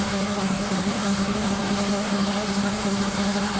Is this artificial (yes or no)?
yes